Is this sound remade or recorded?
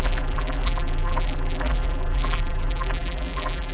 remade